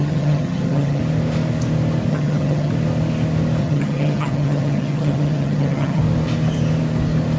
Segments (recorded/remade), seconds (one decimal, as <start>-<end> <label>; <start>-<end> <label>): 0.0-1.0 remade; 1.0-2.1 recorded; 2.1-2.7 remade; 2.7-3.6 recorded; 3.6-6.0 remade; 6.0-7.4 recorded